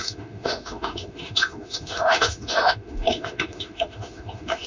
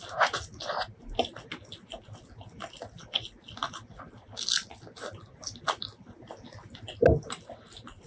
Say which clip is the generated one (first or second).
first